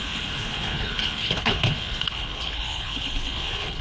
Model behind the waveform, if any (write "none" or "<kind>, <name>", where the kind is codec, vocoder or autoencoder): codec, HILCodec